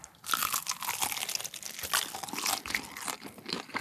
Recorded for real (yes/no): yes